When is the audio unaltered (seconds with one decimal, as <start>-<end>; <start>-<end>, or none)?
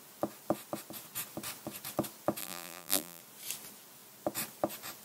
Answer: 0.0-2.4; 3.2-5.0